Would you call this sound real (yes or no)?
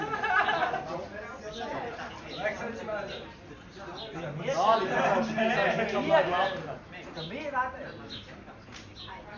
yes